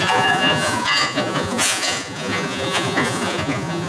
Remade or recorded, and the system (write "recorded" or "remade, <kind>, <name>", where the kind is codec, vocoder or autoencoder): remade, vocoder, Vocos